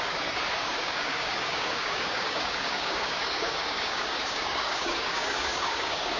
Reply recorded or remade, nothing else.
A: remade